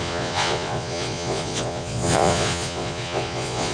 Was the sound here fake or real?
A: fake